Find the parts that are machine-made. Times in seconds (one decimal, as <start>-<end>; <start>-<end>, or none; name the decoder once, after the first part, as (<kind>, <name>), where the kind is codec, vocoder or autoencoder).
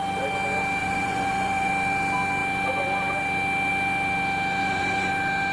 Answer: 0.8-1.7 (vocoder, Vocos); 4.6-5.1